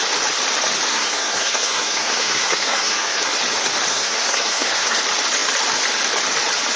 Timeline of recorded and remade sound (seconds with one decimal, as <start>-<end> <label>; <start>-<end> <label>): 0.0-0.9 recorded; 0.9-3.3 remade; 3.3-3.9 recorded; 3.9-5.0 remade; 5.0-6.8 recorded